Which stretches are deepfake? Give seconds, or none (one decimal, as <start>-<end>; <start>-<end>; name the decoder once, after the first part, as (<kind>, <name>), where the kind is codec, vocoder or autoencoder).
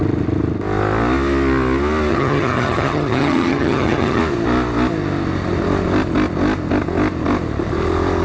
2.1-4.2 (vocoder, HiFi-GAN)